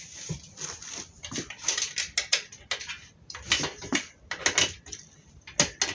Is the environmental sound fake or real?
real